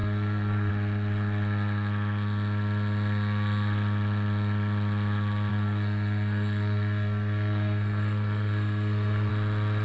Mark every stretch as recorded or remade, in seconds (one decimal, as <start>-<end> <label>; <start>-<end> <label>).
0.0-0.7 remade; 0.7-5.5 recorded; 5.5-9.3 remade; 9.3-9.8 recorded